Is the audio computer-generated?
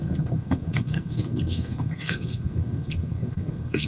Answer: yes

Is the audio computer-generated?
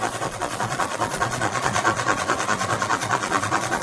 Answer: yes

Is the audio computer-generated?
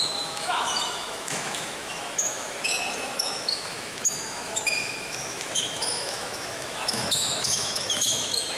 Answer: yes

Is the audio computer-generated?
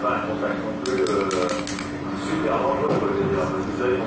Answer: no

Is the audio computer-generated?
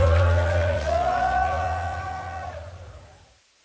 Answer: yes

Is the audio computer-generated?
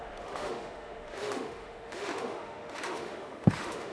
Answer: yes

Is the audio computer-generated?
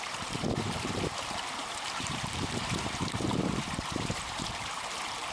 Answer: yes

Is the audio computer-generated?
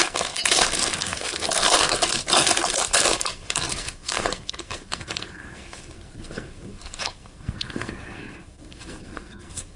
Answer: yes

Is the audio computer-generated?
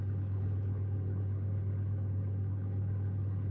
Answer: yes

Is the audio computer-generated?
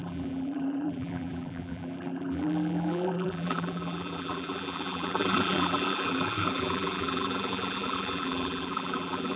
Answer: yes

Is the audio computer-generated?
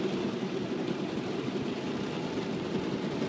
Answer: no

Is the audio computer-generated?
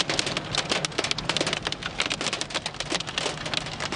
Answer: no